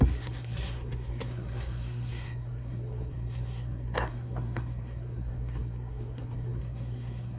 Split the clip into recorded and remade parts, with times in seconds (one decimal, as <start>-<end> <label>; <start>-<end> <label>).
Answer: 0.0-7.4 remade